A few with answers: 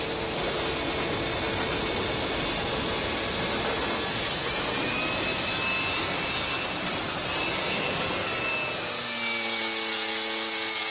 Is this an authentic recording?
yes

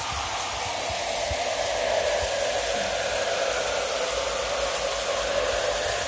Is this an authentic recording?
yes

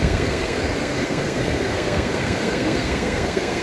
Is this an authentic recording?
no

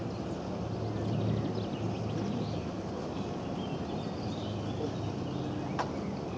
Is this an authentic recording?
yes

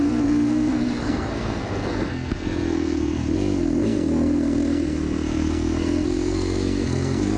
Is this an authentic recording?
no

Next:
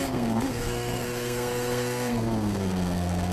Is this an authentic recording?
no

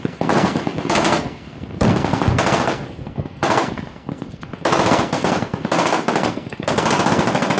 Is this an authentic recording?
no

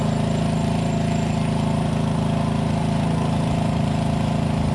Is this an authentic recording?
yes